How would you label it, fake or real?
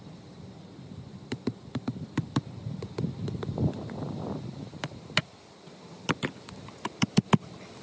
real